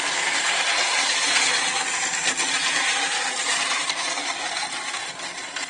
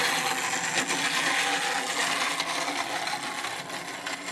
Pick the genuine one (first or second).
second